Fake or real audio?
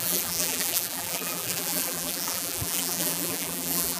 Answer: fake